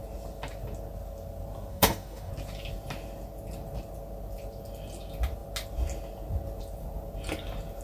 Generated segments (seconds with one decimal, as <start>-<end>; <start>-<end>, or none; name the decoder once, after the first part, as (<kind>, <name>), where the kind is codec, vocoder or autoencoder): 1.7-2.3 (codec, DAC)